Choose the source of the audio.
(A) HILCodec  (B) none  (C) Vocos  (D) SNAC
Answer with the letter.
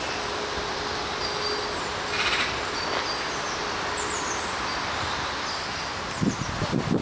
B